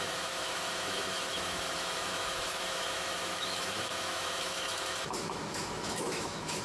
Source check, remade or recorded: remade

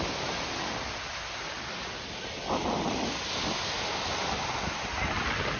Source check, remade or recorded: recorded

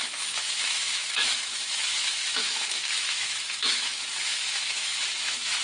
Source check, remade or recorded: remade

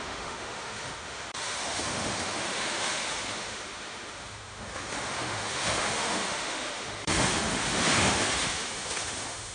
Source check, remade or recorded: remade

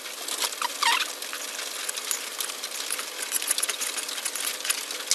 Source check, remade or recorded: recorded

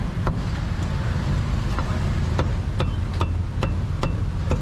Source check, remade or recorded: recorded